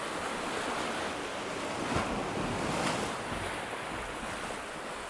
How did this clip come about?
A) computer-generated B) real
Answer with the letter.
B